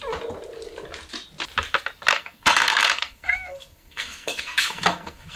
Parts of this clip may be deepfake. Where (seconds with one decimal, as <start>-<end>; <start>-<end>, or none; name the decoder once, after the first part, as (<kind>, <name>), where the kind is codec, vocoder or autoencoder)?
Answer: 2.1-5.4 (codec, SNAC)